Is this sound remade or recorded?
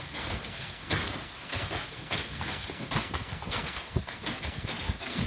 remade